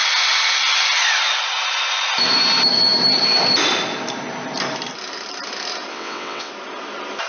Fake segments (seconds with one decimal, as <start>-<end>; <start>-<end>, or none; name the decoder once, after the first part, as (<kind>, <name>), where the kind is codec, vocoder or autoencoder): 5.9-6.5 (vocoder, WaveNeXt)